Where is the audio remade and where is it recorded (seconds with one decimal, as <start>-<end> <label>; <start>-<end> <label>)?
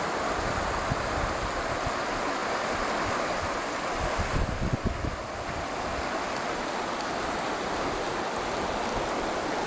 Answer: 0.0-9.7 recorded